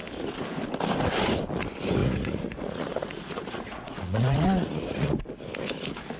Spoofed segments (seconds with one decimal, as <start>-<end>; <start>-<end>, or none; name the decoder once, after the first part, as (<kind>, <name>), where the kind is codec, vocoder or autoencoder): 2.0-5.2 (vocoder, Vocos)